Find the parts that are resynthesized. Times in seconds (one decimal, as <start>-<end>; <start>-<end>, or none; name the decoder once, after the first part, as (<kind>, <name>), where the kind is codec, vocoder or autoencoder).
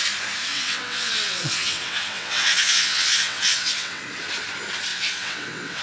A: 0.5-4.0 (vocoder, WaveNeXt); 4.9-5.8